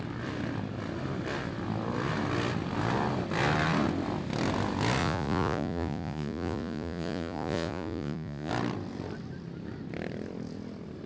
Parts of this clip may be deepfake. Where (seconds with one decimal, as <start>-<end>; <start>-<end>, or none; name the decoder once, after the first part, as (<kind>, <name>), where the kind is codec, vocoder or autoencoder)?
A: 5.0-8.5 (vocoder, Vocos)